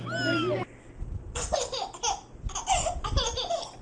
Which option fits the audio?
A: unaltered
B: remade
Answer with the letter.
A